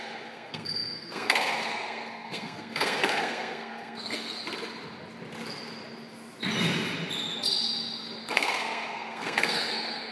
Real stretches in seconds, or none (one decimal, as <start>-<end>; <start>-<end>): 4.4-8.2